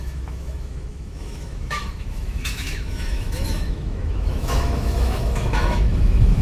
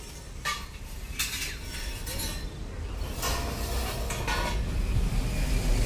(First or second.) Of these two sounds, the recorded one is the second